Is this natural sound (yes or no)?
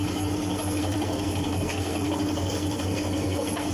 no